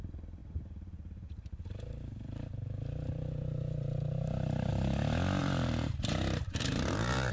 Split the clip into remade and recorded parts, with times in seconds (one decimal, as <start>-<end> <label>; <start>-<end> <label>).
0.0-0.4 recorded; 0.4-4.7 remade; 4.7-5.4 recorded; 5.4-7.3 remade